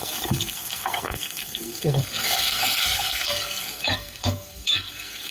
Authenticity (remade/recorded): remade